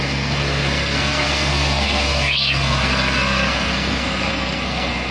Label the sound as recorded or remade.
remade